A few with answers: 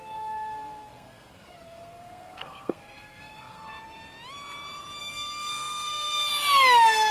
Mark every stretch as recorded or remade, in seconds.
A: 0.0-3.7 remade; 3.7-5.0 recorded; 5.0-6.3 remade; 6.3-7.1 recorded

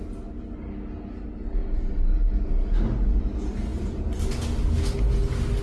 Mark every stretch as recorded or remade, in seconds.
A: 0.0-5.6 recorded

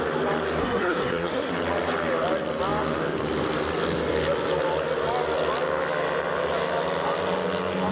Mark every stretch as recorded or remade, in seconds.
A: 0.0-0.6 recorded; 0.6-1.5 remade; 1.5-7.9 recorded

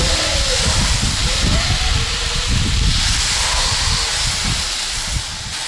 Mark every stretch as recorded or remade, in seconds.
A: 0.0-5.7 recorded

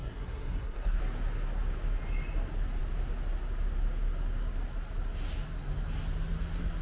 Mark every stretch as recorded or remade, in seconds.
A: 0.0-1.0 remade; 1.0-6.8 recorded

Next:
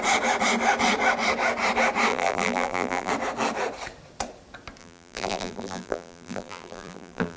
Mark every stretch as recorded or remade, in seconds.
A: 0.0-2.1 recorded; 2.1-3.1 remade; 3.1-4.8 recorded; 4.8-7.4 remade